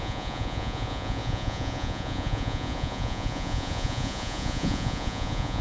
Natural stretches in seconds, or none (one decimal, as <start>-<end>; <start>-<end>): none